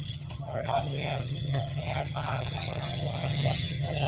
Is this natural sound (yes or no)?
no